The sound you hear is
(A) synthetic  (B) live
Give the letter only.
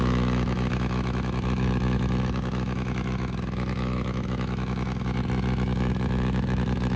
A